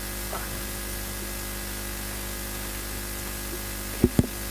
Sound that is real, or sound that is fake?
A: real